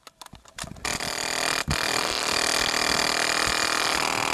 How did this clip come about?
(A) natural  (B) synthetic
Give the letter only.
A